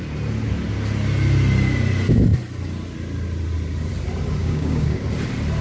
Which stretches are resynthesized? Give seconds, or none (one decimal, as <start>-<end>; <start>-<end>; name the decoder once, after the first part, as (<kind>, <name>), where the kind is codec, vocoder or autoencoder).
4.4-5.0 (codec, DAC)